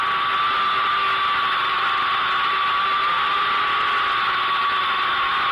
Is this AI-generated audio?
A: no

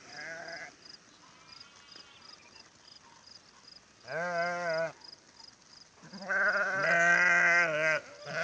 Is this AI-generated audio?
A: no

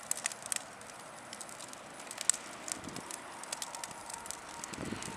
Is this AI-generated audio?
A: no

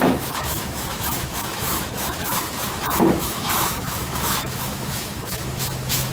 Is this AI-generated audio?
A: yes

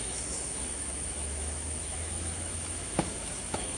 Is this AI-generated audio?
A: yes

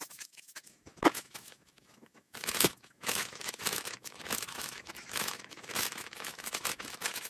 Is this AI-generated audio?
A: yes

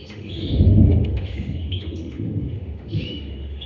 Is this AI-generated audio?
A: yes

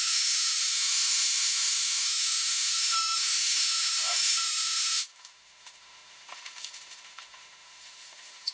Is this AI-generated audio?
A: yes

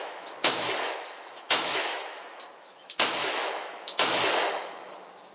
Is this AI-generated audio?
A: yes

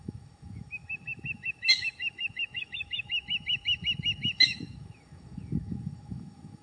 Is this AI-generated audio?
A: yes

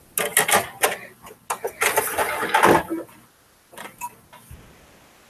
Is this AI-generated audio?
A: no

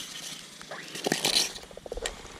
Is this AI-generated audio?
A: no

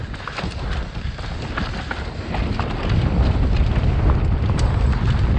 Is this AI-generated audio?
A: no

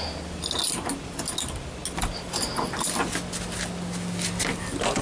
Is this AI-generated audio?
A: no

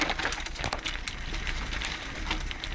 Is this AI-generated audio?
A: no